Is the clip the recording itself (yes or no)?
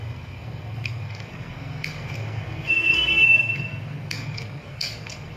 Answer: no